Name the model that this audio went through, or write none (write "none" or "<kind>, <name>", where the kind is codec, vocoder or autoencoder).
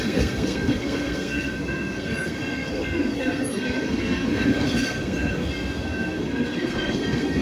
codec, SNAC